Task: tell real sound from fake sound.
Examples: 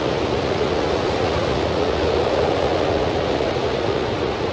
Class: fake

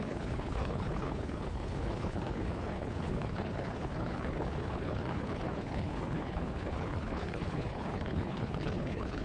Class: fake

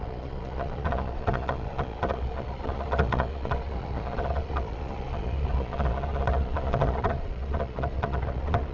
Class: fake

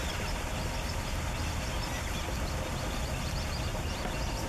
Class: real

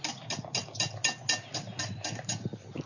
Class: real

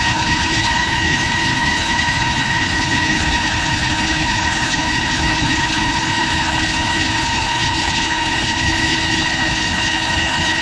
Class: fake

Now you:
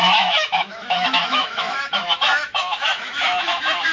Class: fake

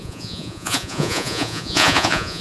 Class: fake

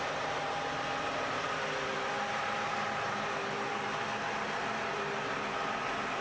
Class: fake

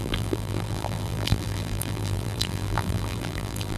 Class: fake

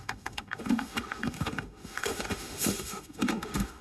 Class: fake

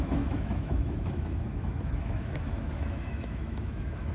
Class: fake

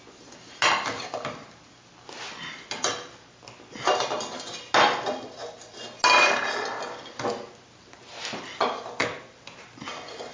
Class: real